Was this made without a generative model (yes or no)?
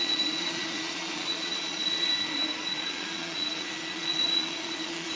no